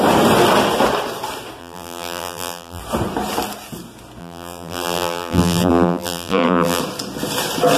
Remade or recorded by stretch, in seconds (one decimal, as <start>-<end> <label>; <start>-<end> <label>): 0.0-1.6 recorded; 1.6-2.8 remade; 2.8-4.2 recorded; 4.2-6.8 remade; 6.8-7.8 recorded